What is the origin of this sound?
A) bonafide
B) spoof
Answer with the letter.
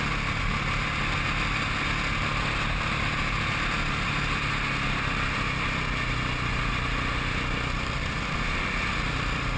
A